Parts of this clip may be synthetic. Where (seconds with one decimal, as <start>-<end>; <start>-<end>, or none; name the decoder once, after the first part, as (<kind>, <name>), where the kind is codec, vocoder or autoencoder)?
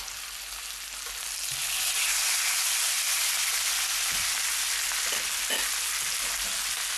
none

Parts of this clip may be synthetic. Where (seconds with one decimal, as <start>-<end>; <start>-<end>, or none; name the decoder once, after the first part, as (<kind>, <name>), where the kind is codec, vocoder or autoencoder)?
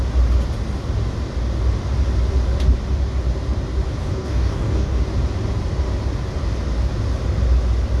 4.0-5.0 (codec, DAC)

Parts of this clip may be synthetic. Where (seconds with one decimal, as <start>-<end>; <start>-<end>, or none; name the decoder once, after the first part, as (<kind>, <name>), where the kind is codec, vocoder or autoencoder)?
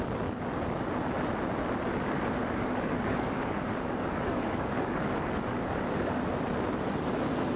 2.4-6.2 (codec, DAC)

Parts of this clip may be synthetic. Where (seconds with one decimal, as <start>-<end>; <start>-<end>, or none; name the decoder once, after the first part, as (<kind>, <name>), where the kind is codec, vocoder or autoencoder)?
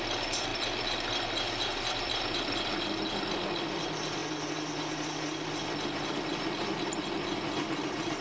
none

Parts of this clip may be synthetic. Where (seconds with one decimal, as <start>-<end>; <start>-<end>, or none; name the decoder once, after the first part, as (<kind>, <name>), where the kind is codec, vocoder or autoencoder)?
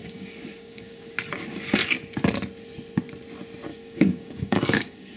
0.0-1.1 (codec, DAC); 3.7-5.2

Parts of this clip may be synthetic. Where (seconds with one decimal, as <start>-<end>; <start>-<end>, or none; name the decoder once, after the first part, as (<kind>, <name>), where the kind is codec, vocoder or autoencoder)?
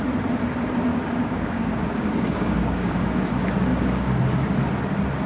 0.9-3.3 (codec, DAC); 3.7-4.2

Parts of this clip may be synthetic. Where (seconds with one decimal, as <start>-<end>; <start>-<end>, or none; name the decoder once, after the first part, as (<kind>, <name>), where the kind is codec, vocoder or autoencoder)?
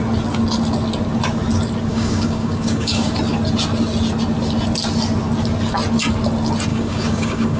1.9-3.1 (codec, DAC); 6.7-7.6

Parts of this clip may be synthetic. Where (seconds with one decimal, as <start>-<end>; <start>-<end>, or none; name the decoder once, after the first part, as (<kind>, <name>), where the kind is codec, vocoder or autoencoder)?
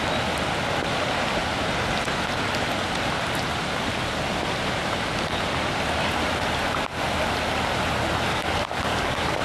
8.3-9.4 (codec, DAC)